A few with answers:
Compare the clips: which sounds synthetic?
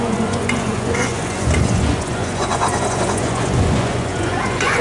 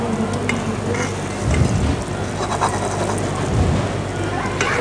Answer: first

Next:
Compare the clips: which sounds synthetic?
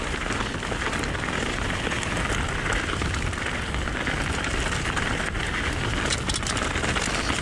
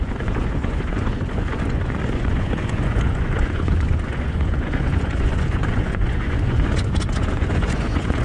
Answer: second